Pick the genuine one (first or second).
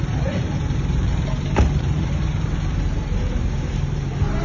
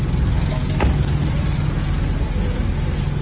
second